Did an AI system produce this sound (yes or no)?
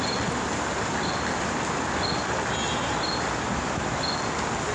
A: no